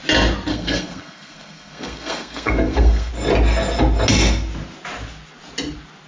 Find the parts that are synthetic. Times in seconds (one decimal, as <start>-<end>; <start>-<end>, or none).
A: 0.5-3.1